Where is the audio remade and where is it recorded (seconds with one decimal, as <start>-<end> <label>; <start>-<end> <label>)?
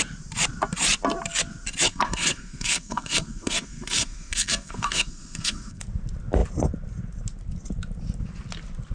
0.0-1.9 recorded; 1.9-5.8 remade; 5.8-8.9 recorded